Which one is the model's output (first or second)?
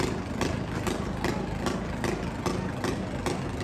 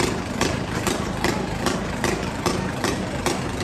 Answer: second